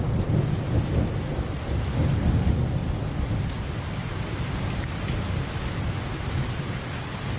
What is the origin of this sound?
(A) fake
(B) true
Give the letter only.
B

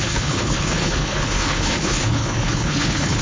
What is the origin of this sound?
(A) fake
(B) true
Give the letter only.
A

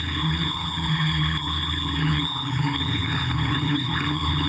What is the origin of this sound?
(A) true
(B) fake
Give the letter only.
B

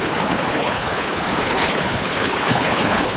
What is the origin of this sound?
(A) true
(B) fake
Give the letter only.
B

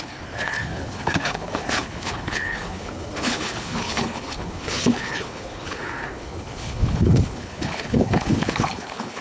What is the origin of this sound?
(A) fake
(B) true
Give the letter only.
A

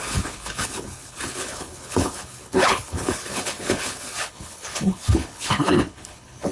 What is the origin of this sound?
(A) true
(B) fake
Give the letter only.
B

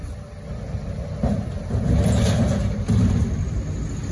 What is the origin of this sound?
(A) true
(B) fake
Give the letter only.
A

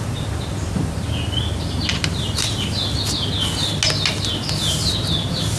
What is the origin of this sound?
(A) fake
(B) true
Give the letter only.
B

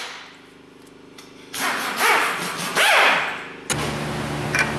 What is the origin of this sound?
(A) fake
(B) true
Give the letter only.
B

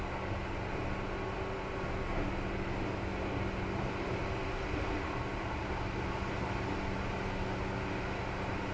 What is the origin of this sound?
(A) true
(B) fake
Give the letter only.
A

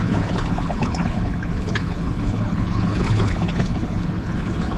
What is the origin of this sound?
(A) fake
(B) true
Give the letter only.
A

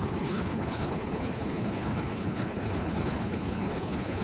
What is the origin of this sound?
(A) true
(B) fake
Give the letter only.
B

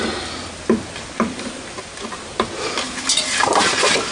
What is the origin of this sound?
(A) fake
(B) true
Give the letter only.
B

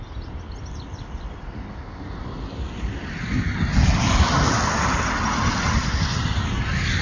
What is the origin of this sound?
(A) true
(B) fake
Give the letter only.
A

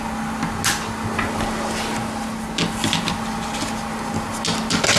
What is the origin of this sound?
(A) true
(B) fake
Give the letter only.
A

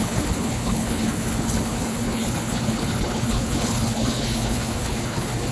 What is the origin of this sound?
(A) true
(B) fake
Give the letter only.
B